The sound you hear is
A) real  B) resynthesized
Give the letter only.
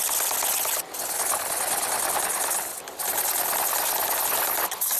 A